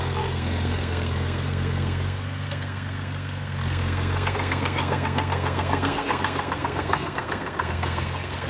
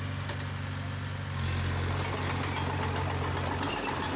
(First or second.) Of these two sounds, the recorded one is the second